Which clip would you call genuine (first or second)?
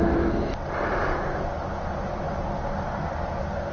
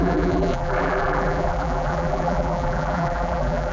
first